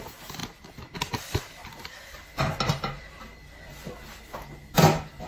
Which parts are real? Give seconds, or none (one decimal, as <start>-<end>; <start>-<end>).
0.0-5.3